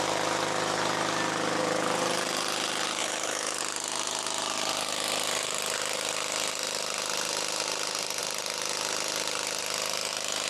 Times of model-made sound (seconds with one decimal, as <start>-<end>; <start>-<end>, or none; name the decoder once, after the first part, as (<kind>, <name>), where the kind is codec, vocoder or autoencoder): 3.0-3.6 (autoencoder, DAC-VAE)